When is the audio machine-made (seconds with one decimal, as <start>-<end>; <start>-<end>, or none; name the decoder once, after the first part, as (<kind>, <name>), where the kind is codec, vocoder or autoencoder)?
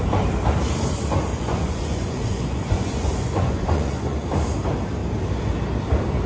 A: 1.3-4.3 (vocoder, Vocos)